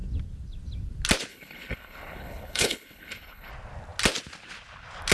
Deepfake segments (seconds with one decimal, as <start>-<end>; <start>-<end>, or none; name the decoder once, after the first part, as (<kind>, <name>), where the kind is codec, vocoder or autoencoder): 1.3-3.5 (codec, HILCodec)